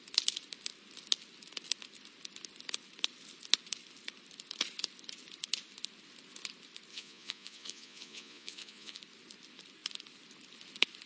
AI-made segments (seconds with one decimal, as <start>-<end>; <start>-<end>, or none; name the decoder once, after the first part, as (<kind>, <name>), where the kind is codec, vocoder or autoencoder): 6.9-9.0 (vocoder, Vocos)